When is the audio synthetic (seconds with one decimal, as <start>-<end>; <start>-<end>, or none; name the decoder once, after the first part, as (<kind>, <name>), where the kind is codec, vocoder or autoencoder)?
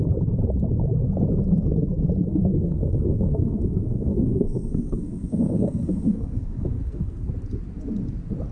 2.3-7.3 (codec, SNAC)